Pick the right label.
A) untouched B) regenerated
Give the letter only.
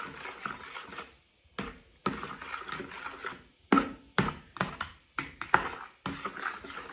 A